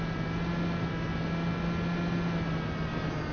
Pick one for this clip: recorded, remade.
recorded